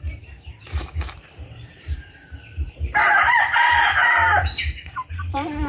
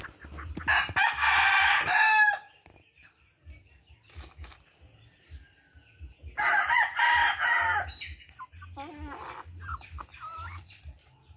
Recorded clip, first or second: second